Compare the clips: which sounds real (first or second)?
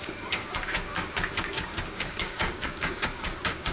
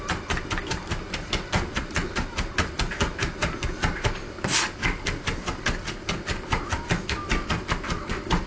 second